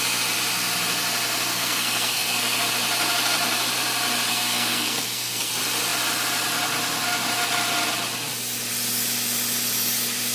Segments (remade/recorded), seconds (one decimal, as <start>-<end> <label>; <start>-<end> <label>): 0.0-1.5 recorded; 1.5-2.7 remade; 2.7-4.3 recorded; 4.3-5.5 remade; 5.5-10.3 recorded